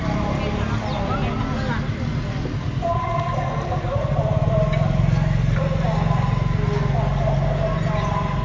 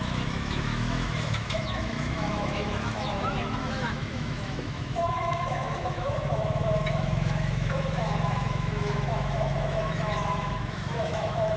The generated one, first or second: second